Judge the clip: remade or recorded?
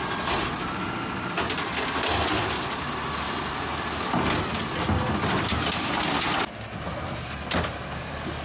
recorded